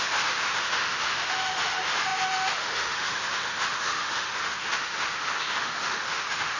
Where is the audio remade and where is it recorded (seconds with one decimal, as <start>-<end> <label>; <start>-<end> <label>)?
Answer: 0.0-6.6 remade